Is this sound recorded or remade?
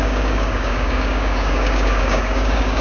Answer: remade